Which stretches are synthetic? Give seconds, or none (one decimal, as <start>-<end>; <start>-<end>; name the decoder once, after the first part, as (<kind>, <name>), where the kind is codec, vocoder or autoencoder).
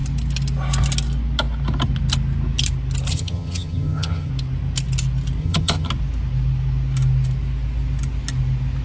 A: 3.1-4.3 (vocoder, HiFi-GAN); 5.4-5.9